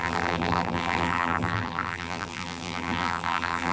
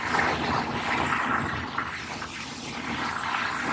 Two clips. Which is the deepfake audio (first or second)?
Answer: first